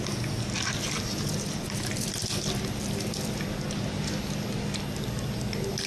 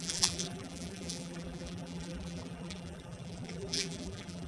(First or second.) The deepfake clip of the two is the second